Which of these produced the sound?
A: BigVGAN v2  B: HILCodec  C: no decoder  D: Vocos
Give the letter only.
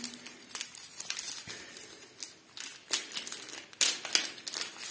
C